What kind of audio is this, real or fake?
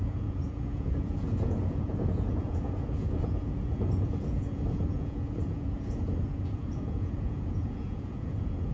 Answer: fake